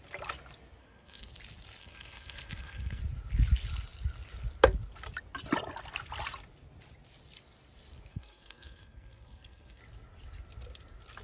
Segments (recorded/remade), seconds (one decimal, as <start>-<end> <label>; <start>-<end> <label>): 0.0-0.8 recorded; 0.8-1.3 remade; 1.3-1.8 recorded; 1.8-3.0 remade; 3.0-8.1 recorded; 8.1-9.8 remade; 9.8-11.2 recorded

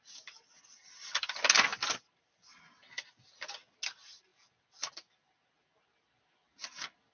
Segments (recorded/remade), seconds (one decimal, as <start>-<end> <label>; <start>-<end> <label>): 0.0-7.1 recorded

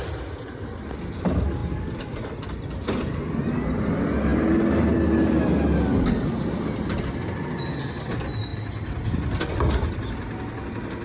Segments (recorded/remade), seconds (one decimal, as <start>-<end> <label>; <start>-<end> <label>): 0.0-11.0 recorded

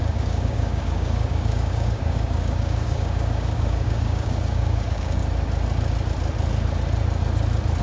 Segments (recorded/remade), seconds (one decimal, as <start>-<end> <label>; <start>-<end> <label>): 0.0-5.2 remade; 5.2-7.8 recorded